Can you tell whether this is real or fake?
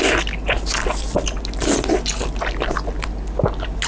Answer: real